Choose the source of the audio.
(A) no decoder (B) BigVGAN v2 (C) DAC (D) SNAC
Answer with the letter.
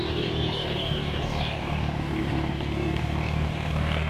C